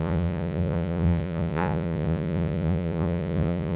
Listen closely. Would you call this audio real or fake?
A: fake